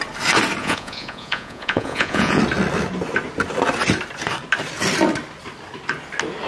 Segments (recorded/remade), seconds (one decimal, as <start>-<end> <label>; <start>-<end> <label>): 0.0-0.6 recorded; 0.6-2.4 remade; 2.4-6.5 recorded